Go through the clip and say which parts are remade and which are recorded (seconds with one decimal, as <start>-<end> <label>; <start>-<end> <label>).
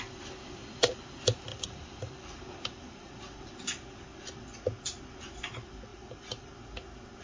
0.0-1.5 recorded; 1.5-3.2 remade; 3.2-5.9 recorded; 5.9-6.5 remade; 6.5-7.2 recorded